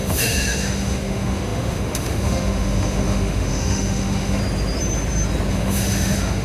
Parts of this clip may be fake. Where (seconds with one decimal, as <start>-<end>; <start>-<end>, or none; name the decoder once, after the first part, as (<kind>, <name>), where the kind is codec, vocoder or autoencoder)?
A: 0.0-4.4 (autoencoder, DAC-VAE); 5.5-6.4

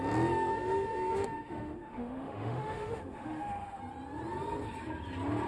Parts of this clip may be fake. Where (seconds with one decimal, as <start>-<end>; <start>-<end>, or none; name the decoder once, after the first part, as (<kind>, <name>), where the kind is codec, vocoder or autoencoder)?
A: 0.5-3.8 (autoencoder, DAC-VAE)

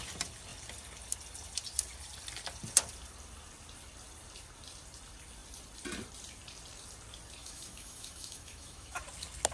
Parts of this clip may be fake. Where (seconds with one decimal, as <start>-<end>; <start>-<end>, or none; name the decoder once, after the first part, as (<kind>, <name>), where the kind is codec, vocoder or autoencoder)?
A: 7.4-9.0 (autoencoder, DAC-VAE)

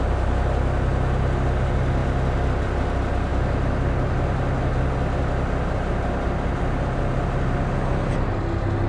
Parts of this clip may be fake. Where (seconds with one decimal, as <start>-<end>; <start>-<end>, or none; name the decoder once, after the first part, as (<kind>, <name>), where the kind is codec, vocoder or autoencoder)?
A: none